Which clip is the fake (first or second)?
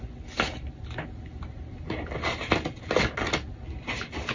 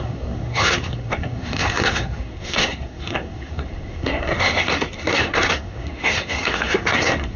second